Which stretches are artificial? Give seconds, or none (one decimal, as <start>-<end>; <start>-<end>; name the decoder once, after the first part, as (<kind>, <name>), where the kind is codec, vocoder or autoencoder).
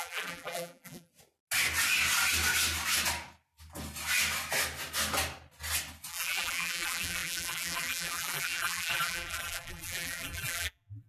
0.0-1.1 (vocoder, BigVGAN v2); 6.1-11.1